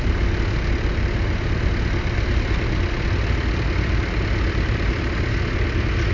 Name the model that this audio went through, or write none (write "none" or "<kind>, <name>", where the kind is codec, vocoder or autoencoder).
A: none